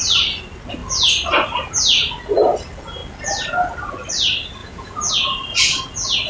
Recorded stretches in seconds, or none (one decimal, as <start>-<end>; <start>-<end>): 0.0-4.6; 5.1-6.3